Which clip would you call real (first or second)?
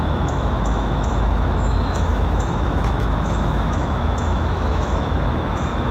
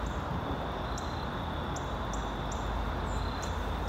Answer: second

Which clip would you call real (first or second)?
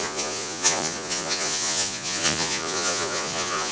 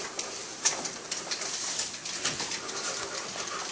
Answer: second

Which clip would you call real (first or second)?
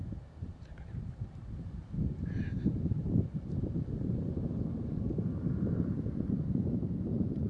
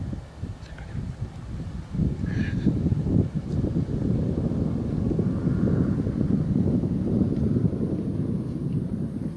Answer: second